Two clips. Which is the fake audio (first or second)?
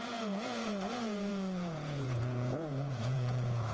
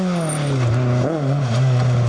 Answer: first